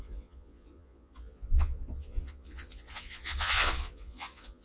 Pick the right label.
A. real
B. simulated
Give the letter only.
B